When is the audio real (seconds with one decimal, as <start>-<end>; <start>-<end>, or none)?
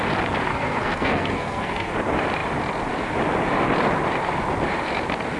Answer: 0.0-0.5; 1.9-5.4